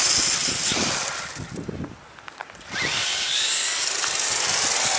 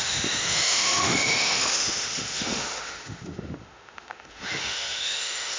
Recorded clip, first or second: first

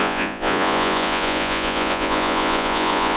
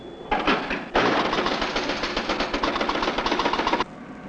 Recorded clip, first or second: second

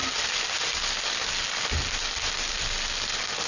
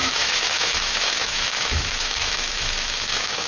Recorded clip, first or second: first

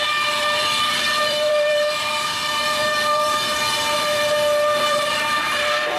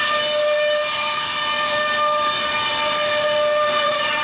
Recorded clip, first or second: second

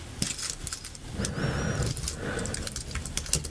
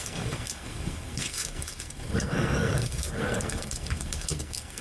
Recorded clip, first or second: first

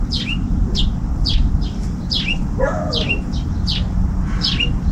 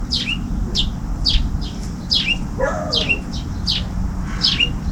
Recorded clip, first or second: second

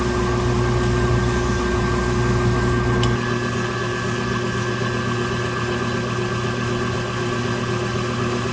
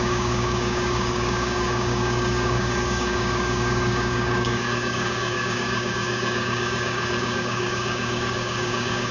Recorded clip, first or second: first